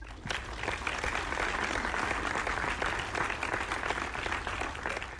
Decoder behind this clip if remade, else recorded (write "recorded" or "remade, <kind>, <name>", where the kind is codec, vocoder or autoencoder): recorded